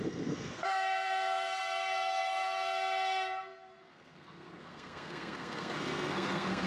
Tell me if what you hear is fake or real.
fake